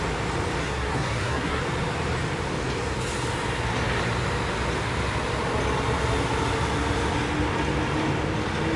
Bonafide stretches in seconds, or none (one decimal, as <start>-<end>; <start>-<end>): 0.0-0.6; 1.6-8.8